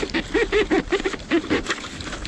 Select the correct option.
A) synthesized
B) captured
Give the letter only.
A